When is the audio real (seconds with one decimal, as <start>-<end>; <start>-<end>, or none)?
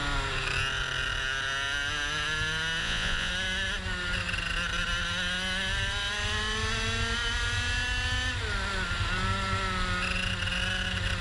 0.0-2.8; 3.3-11.2